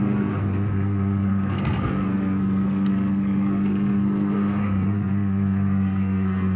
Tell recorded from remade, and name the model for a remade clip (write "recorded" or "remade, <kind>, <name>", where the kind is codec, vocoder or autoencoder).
remade, codec, SNAC